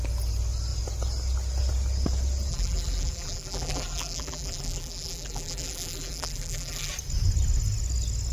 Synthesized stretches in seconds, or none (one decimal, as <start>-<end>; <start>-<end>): 2.5-6.9

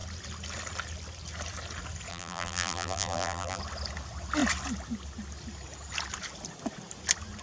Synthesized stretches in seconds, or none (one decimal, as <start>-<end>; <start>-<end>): 2.1-3.6

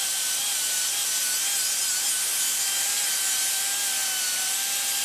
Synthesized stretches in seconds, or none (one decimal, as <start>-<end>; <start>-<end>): none

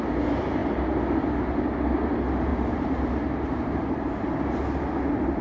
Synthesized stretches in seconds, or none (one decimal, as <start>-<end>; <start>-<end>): 2.5-4.2